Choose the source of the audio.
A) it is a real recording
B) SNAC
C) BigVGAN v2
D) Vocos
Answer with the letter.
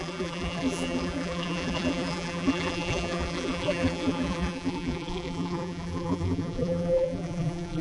C